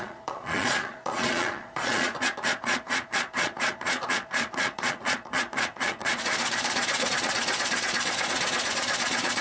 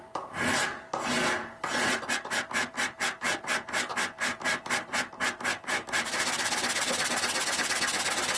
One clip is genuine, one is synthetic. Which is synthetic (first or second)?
first